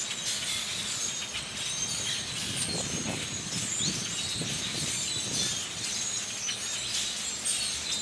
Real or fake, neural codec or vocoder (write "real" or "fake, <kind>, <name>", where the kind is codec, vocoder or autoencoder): real